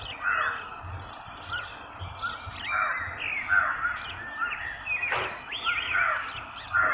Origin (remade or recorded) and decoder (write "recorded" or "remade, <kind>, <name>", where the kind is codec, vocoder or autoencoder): recorded